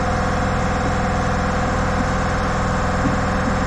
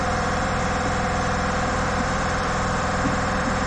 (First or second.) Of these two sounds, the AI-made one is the second